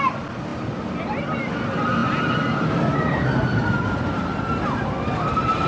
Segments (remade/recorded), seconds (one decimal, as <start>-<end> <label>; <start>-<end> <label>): 0.0-5.7 recorded